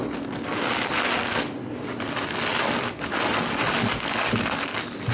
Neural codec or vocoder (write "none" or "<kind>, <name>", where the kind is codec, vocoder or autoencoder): none